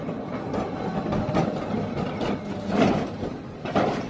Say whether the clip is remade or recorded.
recorded